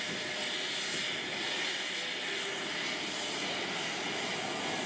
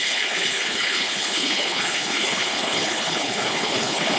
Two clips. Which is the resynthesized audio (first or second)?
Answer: second